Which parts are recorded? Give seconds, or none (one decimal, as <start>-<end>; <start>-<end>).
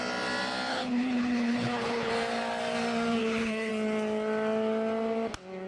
0.0-0.7; 2.1-3.2; 3.7-5.7